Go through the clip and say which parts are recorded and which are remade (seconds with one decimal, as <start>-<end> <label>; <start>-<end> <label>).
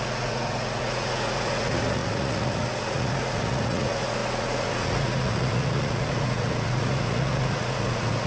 0.0-8.3 remade